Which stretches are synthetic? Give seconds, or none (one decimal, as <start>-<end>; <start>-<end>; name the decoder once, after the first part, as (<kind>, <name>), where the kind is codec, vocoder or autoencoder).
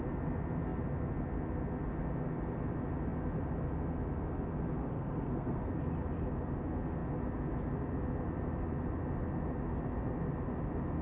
4.8-5.7 (codec, SNAC)